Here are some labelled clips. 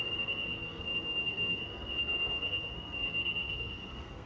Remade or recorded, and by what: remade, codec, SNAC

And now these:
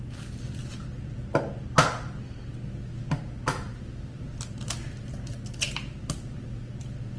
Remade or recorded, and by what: recorded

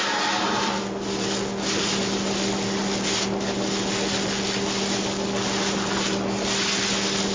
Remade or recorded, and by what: recorded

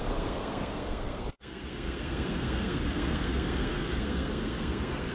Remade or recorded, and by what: remade, codec, SNAC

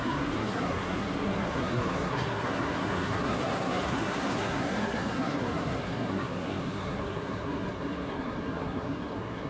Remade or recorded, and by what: remade, codec, SNAC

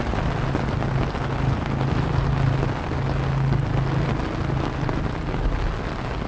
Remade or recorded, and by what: recorded